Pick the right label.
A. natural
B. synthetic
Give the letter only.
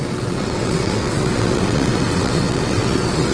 B